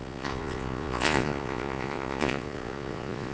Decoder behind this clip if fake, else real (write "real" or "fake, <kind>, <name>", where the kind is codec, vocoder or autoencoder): fake, vocoder, Vocos